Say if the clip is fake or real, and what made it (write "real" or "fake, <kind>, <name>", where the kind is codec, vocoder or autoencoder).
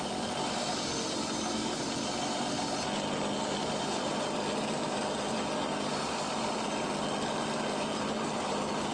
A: real